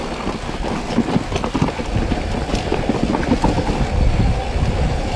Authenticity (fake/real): real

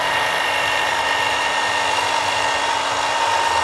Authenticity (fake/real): real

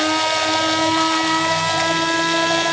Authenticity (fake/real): real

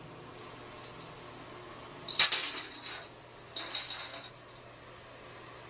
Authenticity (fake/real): real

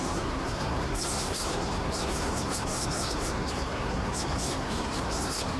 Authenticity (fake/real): fake